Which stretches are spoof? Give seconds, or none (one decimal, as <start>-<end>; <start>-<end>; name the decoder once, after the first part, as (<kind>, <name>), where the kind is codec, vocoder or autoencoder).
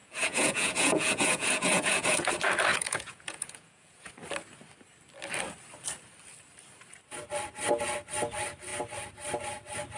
0.0-2.3 (vocoder, Vocos); 2.7-4.1